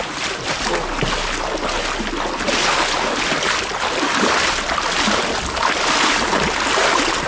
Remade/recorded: recorded